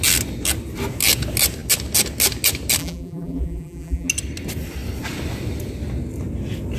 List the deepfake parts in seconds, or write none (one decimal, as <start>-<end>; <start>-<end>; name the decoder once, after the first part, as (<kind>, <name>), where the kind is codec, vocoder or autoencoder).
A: 2.8-4.1 (vocoder, BigVGAN v2)